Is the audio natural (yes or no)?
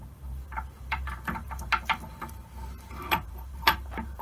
no